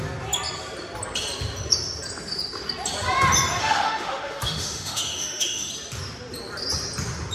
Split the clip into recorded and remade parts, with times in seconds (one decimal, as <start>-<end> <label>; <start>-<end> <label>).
0.0-3.6 recorded; 3.6-5.7 remade; 5.7-7.3 recorded